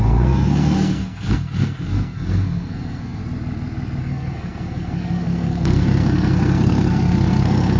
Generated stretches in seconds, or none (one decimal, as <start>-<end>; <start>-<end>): 0.0-3.2; 4.0-7.8